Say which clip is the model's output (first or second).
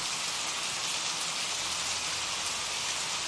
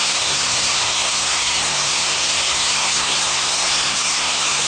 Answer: second